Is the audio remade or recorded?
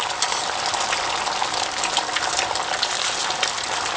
recorded